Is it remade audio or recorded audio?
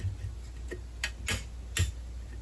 recorded